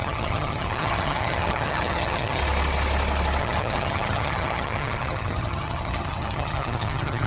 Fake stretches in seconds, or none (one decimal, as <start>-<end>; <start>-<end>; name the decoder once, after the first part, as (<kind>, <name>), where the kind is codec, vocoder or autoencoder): 0.0-2.4 (vocoder, HiFi-GAN); 3.4-7.3